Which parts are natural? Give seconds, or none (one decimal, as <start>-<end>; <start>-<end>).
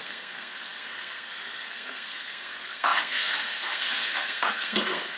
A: none